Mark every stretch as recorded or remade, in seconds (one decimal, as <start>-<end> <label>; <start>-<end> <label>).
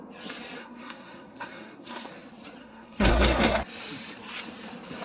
0.0-0.6 recorded; 0.6-2.1 remade; 2.1-2.6 recorded; 2.6-3.6 remade; 3.6-5.0 recorded